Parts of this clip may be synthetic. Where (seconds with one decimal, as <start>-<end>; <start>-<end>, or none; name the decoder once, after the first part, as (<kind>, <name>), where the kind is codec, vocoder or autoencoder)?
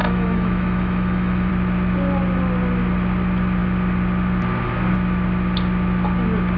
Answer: 0.0-1.5 (autoencoder, DAC-VAE)